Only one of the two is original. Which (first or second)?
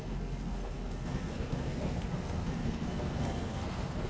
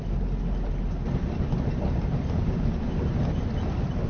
second